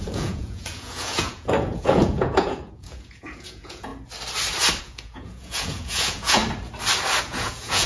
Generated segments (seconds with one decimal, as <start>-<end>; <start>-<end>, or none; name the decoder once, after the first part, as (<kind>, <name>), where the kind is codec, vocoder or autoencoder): 0.0-3.9 (vocoder, Vocos); 4.8-6.4; 7.2-7.9